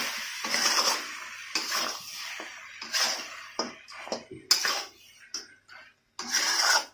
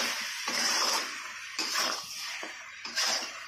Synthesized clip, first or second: second